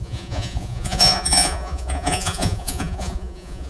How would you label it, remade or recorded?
remade